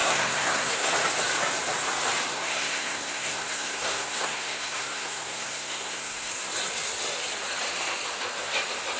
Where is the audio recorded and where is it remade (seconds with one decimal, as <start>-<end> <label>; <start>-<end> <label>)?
0.0-0.9 remade; 0.9-2.3 recorded; 2.3-6.3 remade; 6.3-9.0 recorded